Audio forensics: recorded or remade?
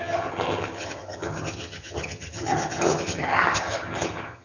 remade